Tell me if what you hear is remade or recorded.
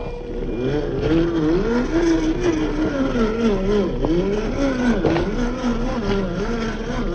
recorded